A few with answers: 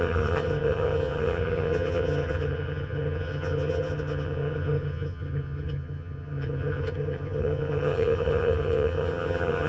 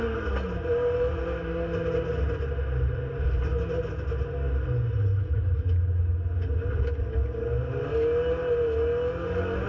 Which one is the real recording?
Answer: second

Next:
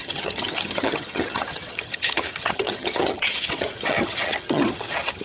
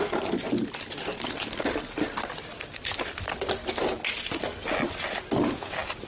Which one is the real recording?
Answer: second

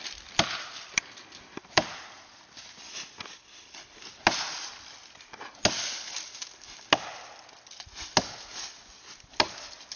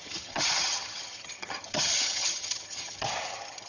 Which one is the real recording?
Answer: first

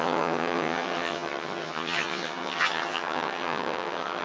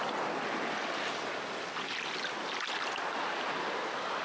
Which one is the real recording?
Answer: second